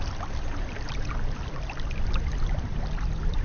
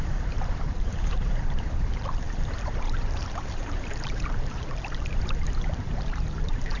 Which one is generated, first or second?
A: second